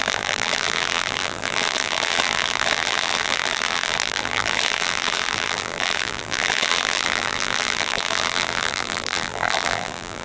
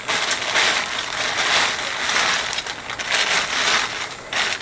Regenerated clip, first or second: first